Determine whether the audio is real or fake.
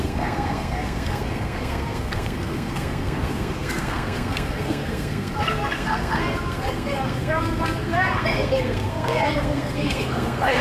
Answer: fake